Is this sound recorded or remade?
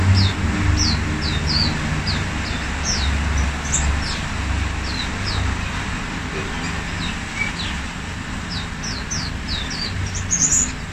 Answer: recorded